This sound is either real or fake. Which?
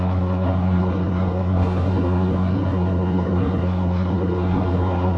fake